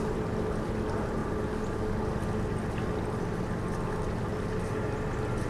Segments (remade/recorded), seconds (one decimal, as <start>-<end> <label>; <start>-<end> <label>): 0.0-5.5 recorded